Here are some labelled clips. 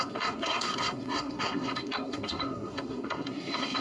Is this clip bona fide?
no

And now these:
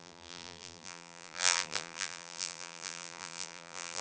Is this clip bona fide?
no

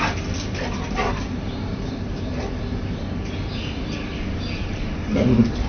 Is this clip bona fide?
yes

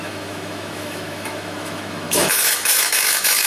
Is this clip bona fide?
no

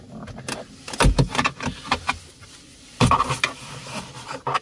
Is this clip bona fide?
yes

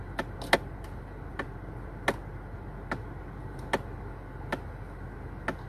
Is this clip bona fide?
yes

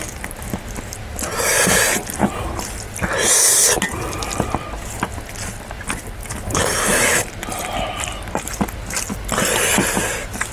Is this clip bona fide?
yes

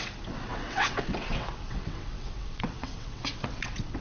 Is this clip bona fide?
no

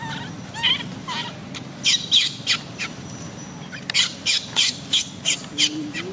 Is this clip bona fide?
yes